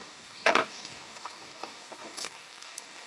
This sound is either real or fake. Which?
fake